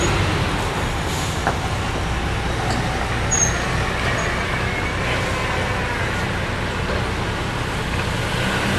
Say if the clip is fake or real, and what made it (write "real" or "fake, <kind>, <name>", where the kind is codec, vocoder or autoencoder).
real